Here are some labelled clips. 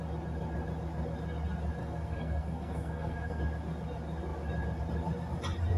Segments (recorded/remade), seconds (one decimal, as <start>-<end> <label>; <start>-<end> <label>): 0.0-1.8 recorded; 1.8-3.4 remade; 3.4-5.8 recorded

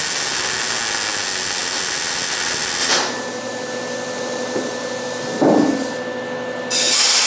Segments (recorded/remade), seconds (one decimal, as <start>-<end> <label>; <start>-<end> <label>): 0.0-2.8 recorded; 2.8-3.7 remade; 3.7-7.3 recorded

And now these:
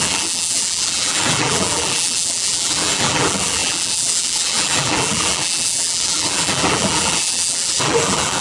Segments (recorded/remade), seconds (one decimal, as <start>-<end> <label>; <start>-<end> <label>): 0.0-8.4 remade